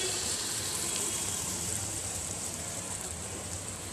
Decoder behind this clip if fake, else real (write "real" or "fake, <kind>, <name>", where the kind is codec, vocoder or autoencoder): fake, vocoder, BigVGAN v2